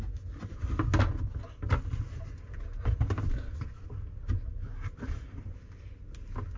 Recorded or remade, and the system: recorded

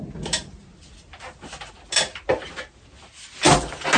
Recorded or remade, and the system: recorded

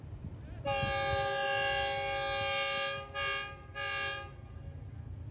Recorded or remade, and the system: recorded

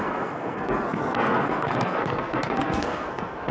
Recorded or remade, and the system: remade, codec, SNAC